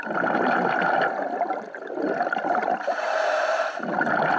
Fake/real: real